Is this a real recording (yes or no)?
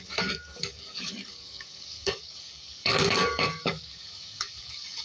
no